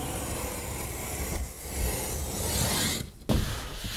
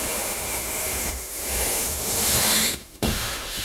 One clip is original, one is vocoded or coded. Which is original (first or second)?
first